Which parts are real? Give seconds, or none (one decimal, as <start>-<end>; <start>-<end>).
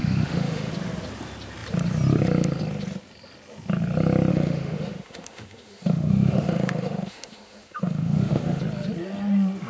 0.7-4.3; 8.6-9.7